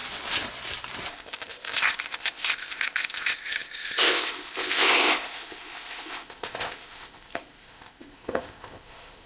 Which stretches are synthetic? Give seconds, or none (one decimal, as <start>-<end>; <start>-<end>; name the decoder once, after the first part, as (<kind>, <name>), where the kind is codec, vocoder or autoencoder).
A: 1.1-9.3 (codec, ZipCodec)